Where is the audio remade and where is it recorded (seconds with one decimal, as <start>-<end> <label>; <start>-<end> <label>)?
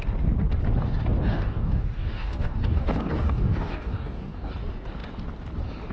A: 0.0-1.3 recorded; 1.3-4.5 remade; 4.5-5.9 recorded